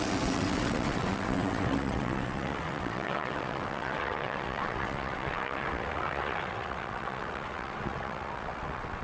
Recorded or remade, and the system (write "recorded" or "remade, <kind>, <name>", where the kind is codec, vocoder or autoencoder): remade, vocoder, WaveNeXt